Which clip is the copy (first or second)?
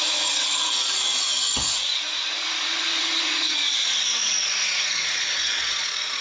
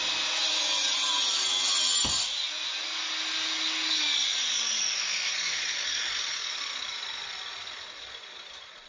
first